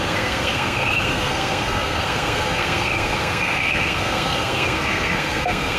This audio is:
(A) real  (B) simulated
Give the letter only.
B